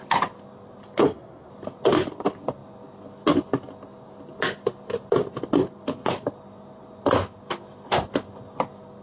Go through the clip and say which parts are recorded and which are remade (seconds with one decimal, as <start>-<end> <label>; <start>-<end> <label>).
0.0-1.0 recorded; 1.0-1.5 remade; 1.5-9.0 recorded

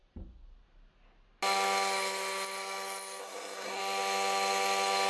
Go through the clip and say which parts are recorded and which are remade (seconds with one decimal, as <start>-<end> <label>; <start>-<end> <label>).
0.0-3.2 recorded; 3.2-3.8 remade; 3.8-5.1 recorded

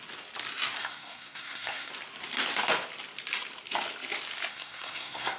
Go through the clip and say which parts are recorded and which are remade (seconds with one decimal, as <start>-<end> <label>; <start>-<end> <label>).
0.0-0.8 recorded; 0.8-1.9 remade; 1.9-4.5 recorded; 4.5-5.4 remade

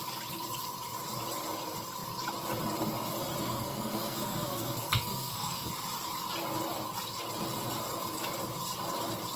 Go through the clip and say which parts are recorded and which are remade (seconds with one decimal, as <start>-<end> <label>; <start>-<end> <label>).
0.0-3.4 recorded; 3.4-5.7 remade; 5.7-9.4 recorded

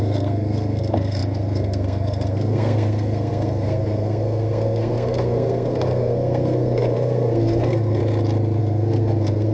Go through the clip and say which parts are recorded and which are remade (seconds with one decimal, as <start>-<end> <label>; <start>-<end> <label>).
0.0-8.0 remade; 8.0-8.6 recorded; 8.6-9.5 remade

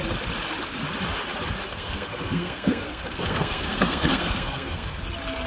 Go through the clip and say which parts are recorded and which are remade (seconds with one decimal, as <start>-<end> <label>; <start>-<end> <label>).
0.0-1.7 recorded; 1.7-5.0 remade; 5.0-5.5 recorded

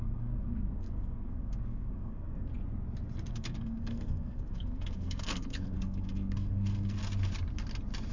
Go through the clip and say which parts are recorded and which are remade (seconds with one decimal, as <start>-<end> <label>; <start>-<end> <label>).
0.0-2.5 remade; 2.5-3.3 recorded; 3.3-7.0 remade; 7.0-8.1 recorded